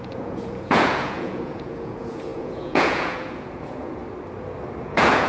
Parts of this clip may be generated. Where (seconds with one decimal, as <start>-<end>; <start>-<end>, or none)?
0.0-4.0; 4.8-5.3